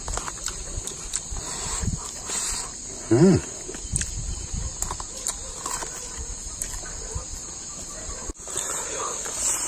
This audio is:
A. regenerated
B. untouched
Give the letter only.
B